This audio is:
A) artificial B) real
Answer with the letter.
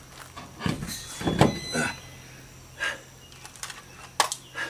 B